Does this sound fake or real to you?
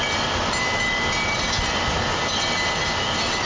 real